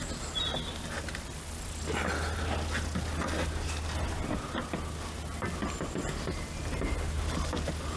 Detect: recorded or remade recorded